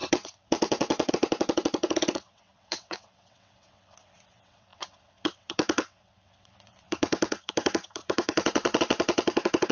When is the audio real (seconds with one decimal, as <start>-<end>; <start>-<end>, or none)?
none

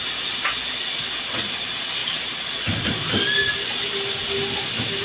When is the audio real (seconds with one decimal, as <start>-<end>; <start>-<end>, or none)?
0.0-5.0

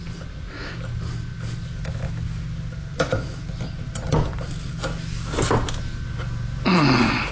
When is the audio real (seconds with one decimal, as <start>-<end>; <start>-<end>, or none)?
0.0-7.3

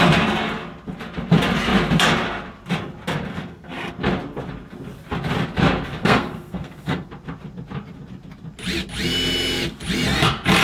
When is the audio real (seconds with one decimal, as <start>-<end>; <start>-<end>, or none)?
0.0-3.3; 3.9-6.0; 7.1-10.6

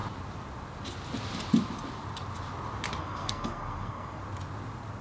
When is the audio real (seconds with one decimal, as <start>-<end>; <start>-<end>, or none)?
0.0-3.0; 4.2-5.0